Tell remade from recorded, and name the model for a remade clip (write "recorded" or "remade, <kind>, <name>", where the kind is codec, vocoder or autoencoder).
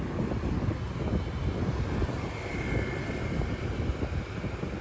recorded